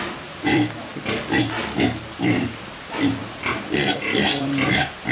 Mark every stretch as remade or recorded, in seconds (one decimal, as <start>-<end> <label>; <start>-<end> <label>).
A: 0.0-0.9 remade; 0.9-1.6 recorded; 1.6-3.2 remade; 3.2-4.4 recorded; 4.4-5.1 remade